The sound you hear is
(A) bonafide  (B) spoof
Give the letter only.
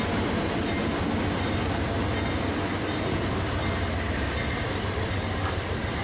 A